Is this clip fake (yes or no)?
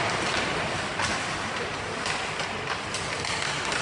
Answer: no